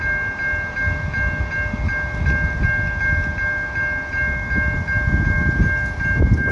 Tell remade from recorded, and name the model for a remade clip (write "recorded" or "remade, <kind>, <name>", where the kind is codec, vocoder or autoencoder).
recorded